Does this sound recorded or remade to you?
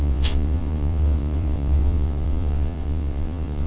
remade